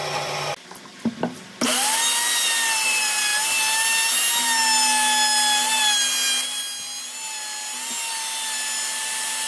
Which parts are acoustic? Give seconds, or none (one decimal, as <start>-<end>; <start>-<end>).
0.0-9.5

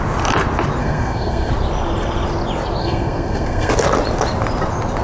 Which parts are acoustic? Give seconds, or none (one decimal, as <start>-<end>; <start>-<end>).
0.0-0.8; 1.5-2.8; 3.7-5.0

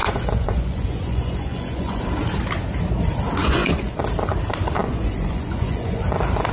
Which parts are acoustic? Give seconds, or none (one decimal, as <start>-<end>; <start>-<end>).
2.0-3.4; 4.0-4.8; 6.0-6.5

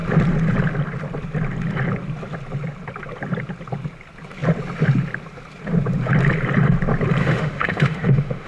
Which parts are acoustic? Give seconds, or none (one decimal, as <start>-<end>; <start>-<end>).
0.0-7.2

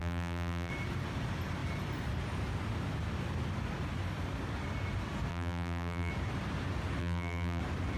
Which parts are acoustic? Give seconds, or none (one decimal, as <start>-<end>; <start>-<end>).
0.7-5.3; 6.1-7.0; 7.6-8.0

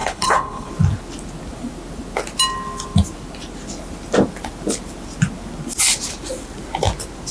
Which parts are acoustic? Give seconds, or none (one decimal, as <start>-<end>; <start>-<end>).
0.7-7.3